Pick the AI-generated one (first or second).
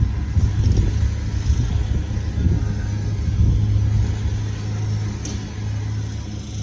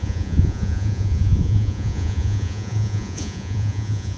second